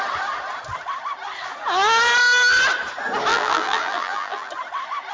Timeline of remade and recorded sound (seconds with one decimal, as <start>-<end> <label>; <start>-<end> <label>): 0.0-3.3 recorded; 3.3-4.5 remade; 4.5-5.1 recorded